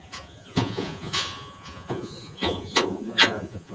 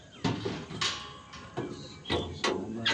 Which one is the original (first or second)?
second